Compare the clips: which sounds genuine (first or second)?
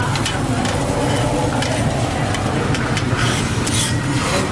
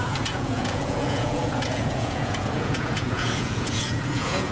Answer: first